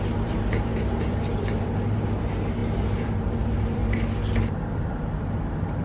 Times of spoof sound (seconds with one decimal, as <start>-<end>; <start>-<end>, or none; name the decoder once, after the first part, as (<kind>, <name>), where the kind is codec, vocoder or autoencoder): 0.0-3.8 (vocoder, BigVGAN v2); 4.5-5.8